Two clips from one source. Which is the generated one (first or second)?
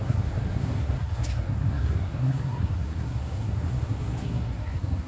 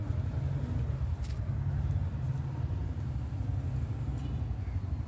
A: first